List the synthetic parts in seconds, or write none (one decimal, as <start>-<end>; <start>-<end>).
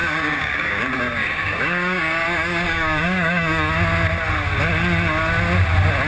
0.0-3.7